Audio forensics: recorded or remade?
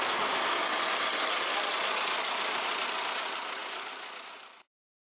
recorded